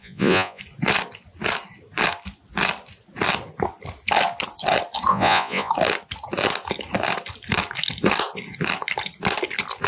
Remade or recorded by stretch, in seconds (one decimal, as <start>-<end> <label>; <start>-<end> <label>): 0.0-0.6 remade; 0.6-5.1 recorded; 5.1-5.7 remade; 5.7-9.9 recorded